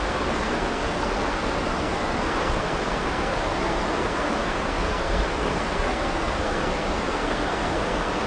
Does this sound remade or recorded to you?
remade